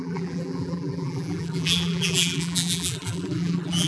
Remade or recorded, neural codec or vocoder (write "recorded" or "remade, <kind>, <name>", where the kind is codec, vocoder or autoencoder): remade, vocoder, BigVGAN v2